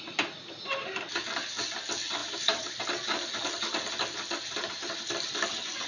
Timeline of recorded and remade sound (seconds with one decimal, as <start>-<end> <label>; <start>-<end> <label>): 0.0-2.2 recorded; 2.2-2.7 remade; 2.7-5.9 recorded